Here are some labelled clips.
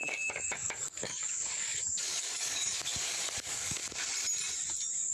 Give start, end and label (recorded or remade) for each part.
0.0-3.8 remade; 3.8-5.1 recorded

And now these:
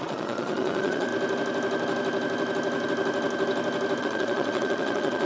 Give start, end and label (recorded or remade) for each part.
0.0-1.1 remade; 1.1-4.0 recorded; 4.0-5.3 remade

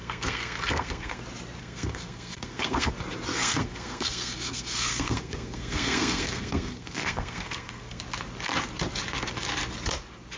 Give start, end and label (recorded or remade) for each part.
0.0-1.2 remade; 1.2-1.6 recorded; 1.6-2.9 remade; 2.9-3.3 recorded; 3.3-8.0 remade; 8.0-10.4 recorded

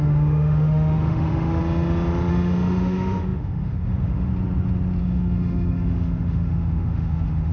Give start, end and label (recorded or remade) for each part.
0.0-1.6 remade; 1.6-2.3 recorded; 2.3-4.3 remade; 4.3-5.0 recorded; 5.0-7.5 remade

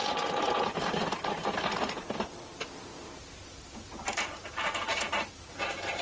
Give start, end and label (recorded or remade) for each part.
0.0-6.0 recorded

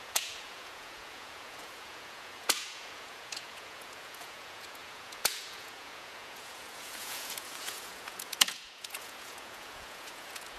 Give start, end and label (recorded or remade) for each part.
0.0-10.6 remade